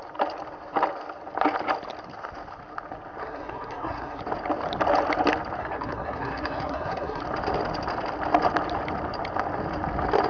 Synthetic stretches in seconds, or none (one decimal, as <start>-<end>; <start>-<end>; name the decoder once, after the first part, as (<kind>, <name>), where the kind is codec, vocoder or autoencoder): 3.2-4.2 (codec, SNAC); 5.6-7.2